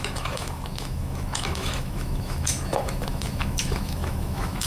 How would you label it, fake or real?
fake